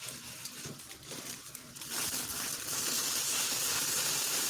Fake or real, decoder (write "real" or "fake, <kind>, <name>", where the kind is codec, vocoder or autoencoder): fake, vocoder, BigVGAN v2